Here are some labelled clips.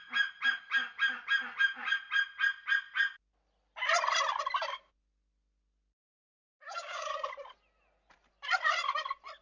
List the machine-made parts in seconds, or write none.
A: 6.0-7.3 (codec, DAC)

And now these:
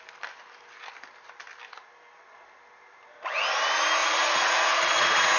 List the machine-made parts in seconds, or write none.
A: 4.0-5.4 (vocoder, Vocos)

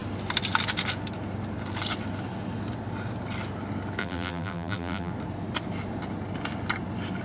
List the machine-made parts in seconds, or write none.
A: 4.0-5.1 (vocoder, BigVGAN v2)

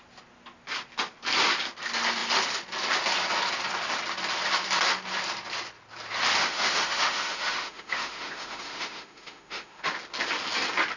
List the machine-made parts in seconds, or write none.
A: 6.4-9.9 (autoencoder, DAC-VAE)

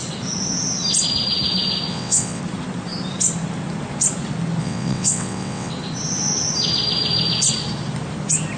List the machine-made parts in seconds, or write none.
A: 1.9-2.4 (vocoder, WaveNeXt); 4.6-5.7

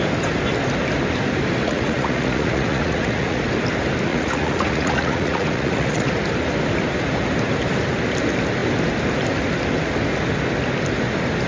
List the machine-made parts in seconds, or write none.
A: 1.6-3.4 (vocoder, Vocos); 4.1-6.1

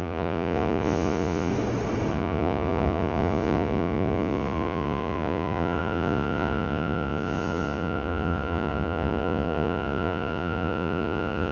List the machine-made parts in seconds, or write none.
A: 0.0-1.5 (vocoder, Vocos); 2.1-11.5